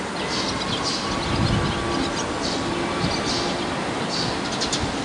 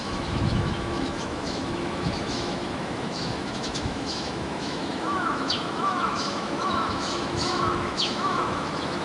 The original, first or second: first